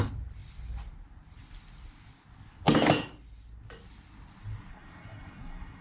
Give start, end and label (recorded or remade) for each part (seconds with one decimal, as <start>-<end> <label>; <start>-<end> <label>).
0.0-4.7 recorded; 4.7-5.8 remade